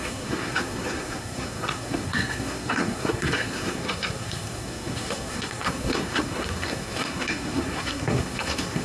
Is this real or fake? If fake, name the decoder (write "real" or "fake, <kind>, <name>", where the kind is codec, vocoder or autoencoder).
fake, codec, SNAC